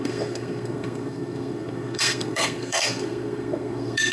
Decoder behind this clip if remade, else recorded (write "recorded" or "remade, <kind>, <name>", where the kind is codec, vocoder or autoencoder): remade, codec, SNAC